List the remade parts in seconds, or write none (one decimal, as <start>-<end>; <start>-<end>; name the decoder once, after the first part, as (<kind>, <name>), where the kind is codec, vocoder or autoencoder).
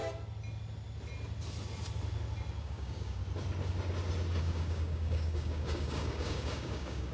2.6-3.2 (codec, DAC); 4.4-7.1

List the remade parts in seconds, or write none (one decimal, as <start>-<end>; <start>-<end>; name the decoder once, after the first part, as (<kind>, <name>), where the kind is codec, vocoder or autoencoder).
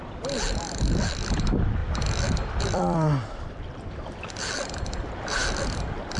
0.0-5.4 (vocoder, BigVGAN v2)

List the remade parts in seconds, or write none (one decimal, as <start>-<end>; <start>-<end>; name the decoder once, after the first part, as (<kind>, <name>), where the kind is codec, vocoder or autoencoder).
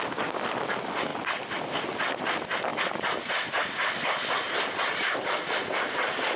1.1-1.6 (vocoder, BigVGAN v2); 2.7-5.1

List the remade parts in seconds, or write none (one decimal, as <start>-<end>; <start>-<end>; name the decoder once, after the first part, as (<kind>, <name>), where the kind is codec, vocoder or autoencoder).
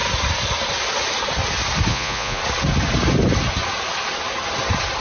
1.9-2.4 (vocoder, Vocos)